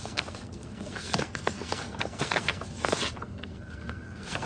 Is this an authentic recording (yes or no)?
no